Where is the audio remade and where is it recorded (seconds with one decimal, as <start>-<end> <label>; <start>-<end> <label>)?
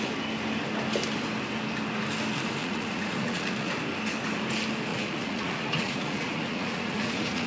0.0-2.6 recorded; 2.6-3.7 remade; 3.7-4.9 recorded; 4.9-7.5 remade